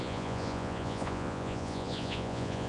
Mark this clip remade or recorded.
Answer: remade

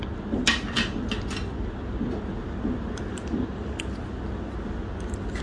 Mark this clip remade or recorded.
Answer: recorded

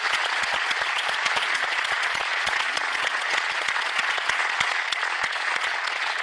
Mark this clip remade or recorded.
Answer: remade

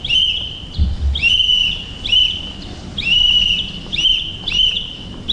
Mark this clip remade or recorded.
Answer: recorded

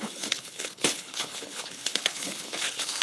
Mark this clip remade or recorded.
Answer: remade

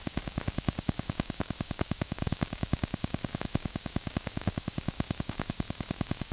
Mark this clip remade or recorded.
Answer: remade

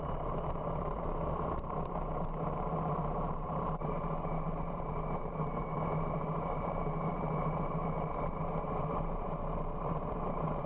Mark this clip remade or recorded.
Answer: remade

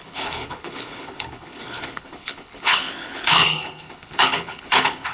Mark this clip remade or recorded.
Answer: remade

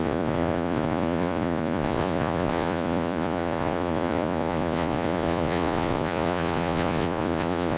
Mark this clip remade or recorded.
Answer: remade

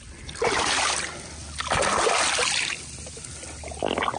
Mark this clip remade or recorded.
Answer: recorded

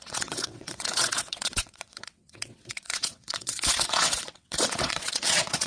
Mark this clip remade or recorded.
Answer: remade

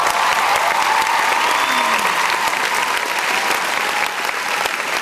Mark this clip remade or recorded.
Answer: recorded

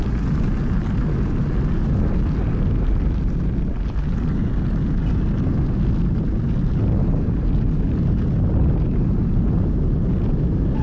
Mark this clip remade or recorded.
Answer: recorded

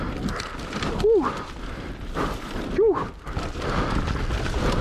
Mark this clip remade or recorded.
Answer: recorded